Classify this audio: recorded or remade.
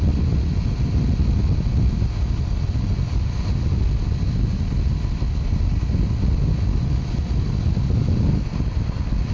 recorded